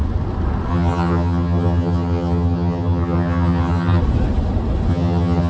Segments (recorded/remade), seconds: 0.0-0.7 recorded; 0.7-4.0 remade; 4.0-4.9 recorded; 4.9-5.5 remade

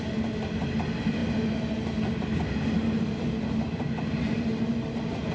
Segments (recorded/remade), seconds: 0.0-5.3 recorded

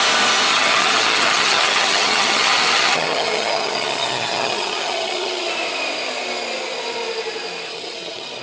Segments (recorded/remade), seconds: 0.0-0.5 recorded; 0.5-5.5 remade; 5.5-7.7 recorded; 7.7-8.4 remade

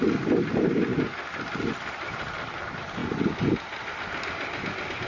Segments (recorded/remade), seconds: 0.0-5.1 recorded